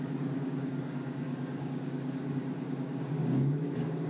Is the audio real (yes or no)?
no